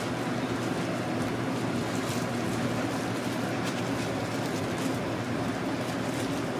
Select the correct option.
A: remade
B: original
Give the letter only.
B